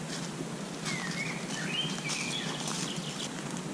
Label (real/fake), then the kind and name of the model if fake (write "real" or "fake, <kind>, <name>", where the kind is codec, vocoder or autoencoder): real